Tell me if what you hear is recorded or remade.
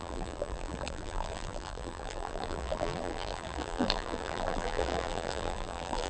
remade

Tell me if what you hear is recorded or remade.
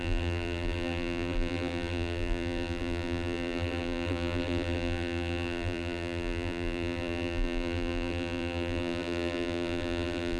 remade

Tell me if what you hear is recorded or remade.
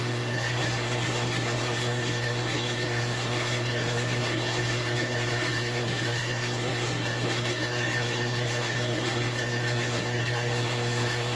remade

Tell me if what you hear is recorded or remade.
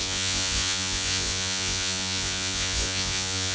remade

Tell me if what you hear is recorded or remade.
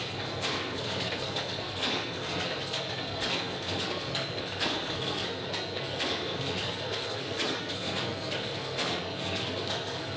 remade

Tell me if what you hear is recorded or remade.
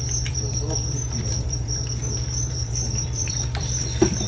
remade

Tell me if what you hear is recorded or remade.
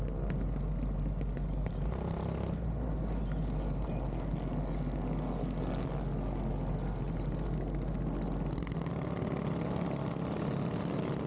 recorded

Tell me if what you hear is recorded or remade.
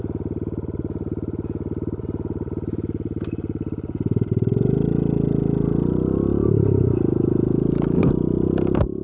recorded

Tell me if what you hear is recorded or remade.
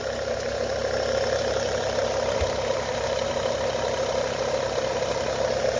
recorded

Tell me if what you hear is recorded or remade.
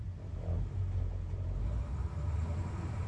recorded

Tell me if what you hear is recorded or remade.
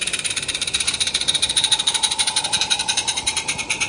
remade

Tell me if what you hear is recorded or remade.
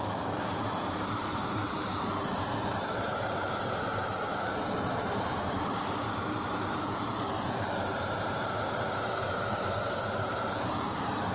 remade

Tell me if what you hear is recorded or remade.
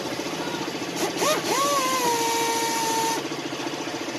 recorded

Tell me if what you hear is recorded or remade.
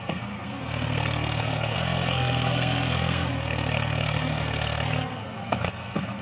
remade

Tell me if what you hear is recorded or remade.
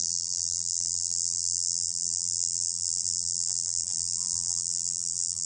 remade